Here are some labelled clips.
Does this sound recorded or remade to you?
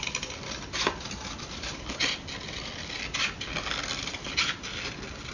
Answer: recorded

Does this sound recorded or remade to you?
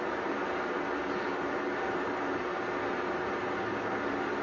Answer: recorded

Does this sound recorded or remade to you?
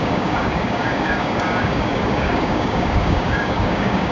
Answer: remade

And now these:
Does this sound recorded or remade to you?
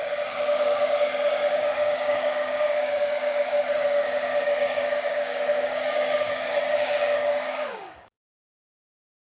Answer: remade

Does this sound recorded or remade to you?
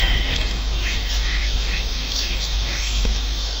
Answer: remade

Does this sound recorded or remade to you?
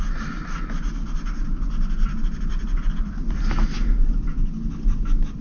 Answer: recorded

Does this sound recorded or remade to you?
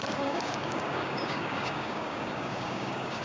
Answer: remade